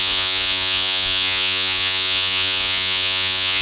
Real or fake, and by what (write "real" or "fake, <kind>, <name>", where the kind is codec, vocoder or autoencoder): fake, vocoder, Vocos